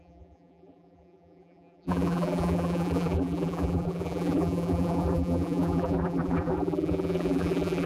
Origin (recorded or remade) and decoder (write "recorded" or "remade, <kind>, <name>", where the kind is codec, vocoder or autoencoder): remade, vocoder, BigVGAN v2